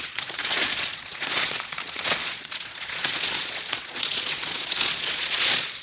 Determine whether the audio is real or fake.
fake